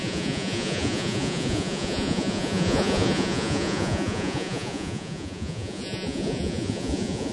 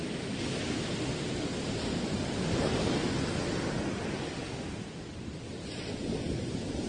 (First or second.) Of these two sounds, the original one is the second